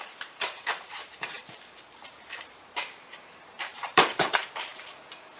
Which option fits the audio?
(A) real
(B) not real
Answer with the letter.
B